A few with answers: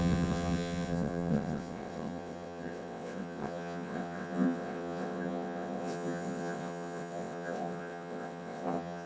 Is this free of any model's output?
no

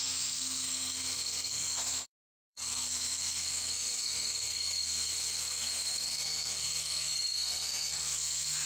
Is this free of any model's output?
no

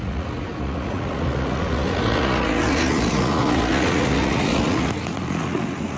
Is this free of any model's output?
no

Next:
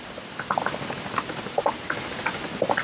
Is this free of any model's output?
yes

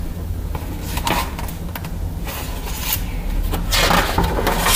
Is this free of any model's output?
yes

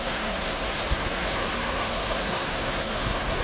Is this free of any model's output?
no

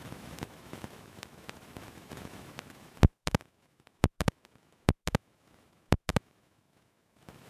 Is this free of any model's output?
no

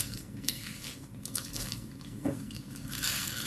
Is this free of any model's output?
no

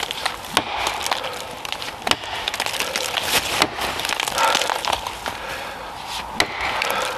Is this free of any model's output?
yes